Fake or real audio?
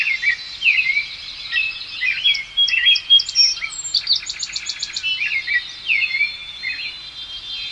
real